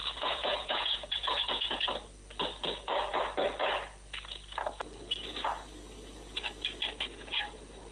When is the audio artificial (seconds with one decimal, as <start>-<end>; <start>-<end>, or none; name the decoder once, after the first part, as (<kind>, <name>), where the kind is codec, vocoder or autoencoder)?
0.0-1.8 (vocoder, Vocos)